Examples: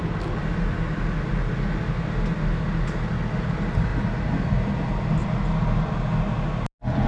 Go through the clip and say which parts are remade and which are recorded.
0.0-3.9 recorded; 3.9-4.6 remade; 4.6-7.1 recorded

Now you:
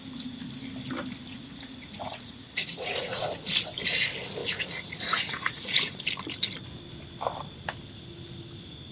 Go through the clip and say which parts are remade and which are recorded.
0.0-1.3 recorded; 1.3-3.2 remade; 3.2-4.4 recorded; 4.4-6.0 remade; 6.0-8.9 recorded